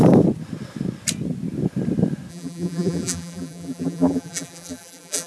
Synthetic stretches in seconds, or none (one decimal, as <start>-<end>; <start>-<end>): 2.3-5.3